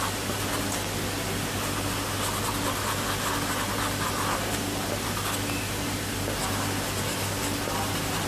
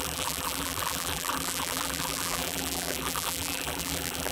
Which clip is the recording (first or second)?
first